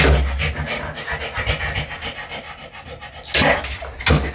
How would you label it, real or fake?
real